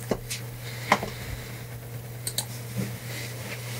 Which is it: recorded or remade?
recorded